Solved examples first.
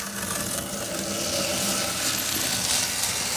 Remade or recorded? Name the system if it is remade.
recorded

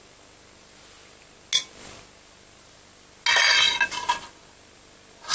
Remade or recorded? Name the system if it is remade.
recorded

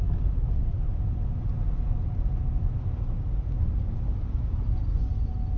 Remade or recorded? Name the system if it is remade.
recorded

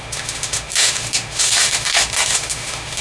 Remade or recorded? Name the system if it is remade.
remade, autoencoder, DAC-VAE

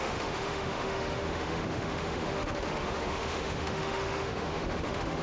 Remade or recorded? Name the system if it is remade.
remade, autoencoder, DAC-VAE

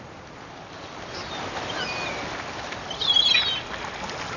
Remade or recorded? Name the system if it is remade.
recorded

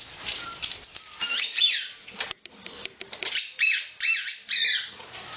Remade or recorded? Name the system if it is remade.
recorded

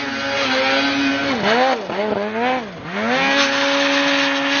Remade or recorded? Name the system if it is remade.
recorded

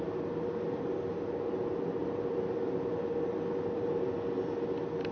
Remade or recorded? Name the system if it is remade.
recorded